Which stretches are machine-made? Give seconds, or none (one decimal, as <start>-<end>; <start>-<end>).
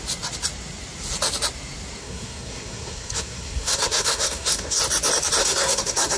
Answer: 2.0-4.8; 5.4-6.2